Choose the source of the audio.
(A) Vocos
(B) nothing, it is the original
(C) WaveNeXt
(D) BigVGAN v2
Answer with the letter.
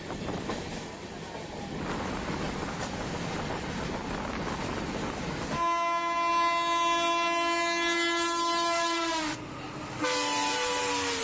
B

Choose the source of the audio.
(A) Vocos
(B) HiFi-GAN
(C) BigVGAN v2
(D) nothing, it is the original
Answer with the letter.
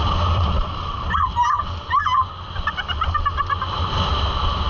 D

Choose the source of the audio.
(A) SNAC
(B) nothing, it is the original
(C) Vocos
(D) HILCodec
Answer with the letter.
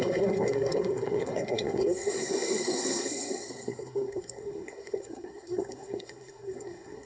A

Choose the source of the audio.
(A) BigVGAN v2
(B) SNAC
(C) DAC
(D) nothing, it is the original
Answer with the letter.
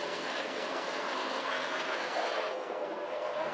B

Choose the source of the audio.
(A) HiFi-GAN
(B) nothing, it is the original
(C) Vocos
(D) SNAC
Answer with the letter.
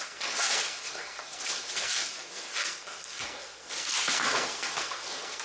D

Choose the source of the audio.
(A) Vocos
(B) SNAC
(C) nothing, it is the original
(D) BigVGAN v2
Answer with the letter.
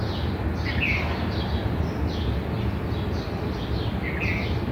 C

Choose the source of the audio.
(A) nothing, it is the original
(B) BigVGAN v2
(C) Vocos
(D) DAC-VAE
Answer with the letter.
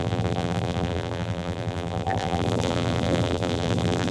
B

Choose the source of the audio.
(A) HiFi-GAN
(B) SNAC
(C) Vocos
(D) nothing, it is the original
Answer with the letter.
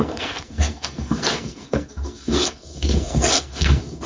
B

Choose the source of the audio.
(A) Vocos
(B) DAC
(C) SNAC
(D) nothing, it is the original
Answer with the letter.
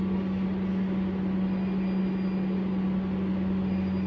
D